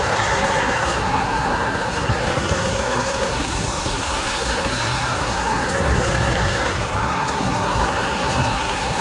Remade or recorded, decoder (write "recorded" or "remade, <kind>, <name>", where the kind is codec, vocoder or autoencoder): remade, codec, SNAC